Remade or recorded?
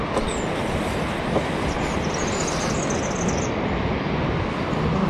recorded